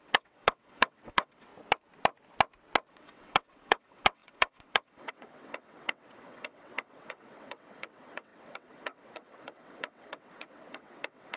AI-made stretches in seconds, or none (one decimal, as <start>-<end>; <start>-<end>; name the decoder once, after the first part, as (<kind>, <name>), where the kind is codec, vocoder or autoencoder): 0.0-1.5 (vocoder, WaveNeXt); 2.9-11.4